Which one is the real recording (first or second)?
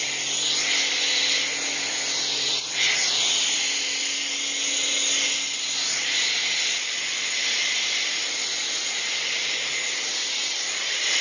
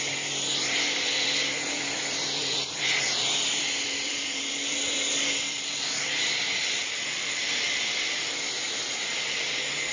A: first